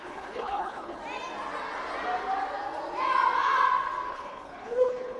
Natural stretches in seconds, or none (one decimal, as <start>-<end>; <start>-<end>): 1.0-4.1